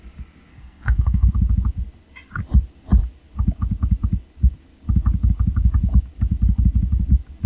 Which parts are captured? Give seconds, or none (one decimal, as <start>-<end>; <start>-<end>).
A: 0.0-0.5; 1.3-7.5